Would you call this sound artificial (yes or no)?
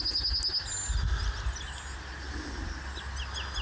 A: no